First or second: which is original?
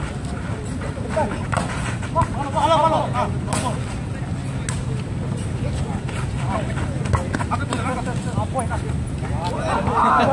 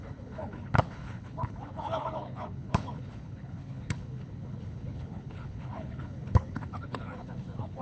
first